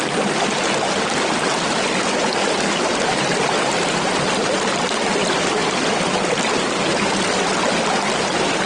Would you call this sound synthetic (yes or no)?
no